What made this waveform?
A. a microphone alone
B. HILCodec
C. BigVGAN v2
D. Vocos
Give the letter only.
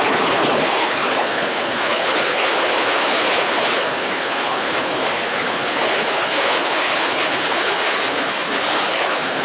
B